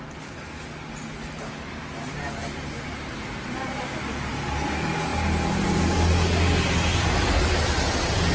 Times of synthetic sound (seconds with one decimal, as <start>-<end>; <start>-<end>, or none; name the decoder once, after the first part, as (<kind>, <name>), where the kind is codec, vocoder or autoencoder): none